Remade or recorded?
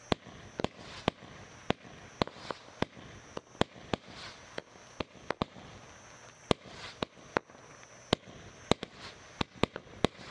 recorded